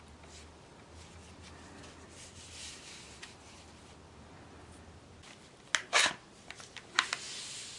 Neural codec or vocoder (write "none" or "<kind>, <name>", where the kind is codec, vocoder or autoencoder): none